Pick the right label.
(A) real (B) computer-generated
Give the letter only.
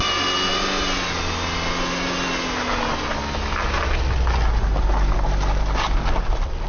A